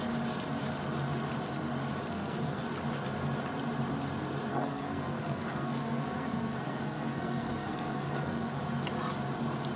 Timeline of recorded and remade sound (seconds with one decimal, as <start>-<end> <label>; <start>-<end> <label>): 0.0-2.0 recorded; 2.0-2.6 remade; 2.6-4.5 recorded; 4.5-8.6 remade; 8.6-9.8 recorded

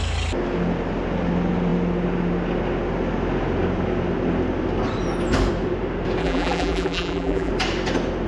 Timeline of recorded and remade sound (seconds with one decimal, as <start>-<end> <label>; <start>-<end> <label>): 0.0-6.2 recorded; 6.2-7.5 remade; 7.5-8.3 recorded

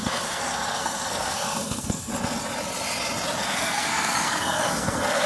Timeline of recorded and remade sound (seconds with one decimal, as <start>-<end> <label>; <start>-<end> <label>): 0.0-2.1 remade; 2.1-3.4 recorded; 3.4-5.3 remade

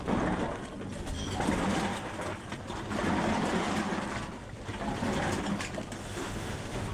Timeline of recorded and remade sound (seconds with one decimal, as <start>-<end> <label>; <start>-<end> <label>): 0.0-6.0 recorded; 6.0-6.9 remade